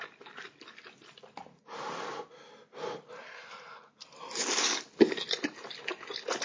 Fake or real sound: real